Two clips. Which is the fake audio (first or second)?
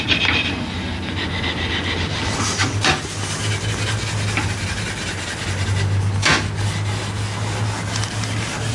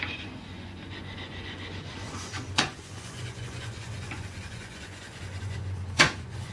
second